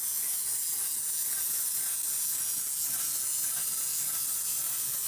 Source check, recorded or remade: recorded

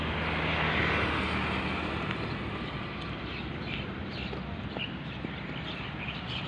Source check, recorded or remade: recorded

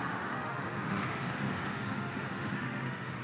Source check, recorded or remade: remade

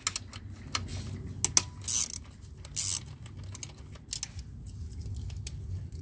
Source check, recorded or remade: recorded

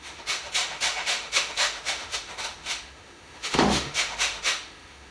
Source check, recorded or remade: remade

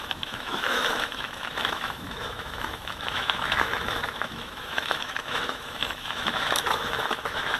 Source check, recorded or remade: remade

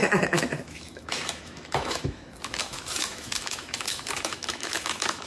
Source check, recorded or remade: remade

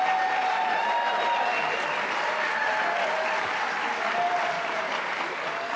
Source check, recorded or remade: recorded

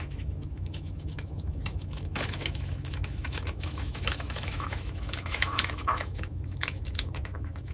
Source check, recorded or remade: remade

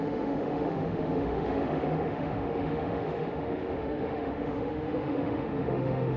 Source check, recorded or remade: remade